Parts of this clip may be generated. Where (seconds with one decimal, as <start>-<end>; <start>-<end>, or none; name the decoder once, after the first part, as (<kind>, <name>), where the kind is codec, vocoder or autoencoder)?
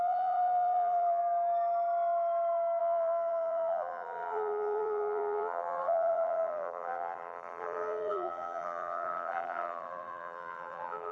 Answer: 0.0-1.2 (vocoder, BigVGAN v2); 2.8-11.1